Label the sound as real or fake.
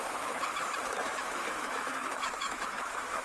fake